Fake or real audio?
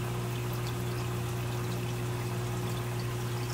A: real